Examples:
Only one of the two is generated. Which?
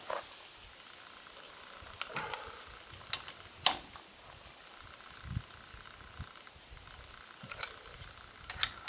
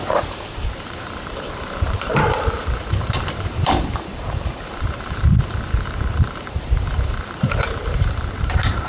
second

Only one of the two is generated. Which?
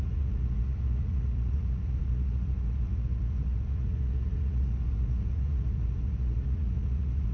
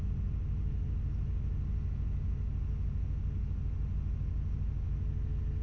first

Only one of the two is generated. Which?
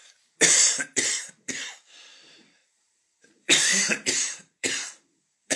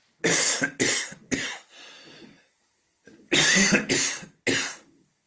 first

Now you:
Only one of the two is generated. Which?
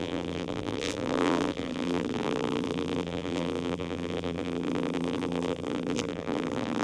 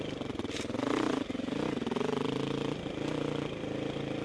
first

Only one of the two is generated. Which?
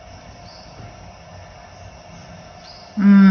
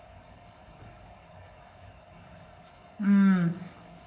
second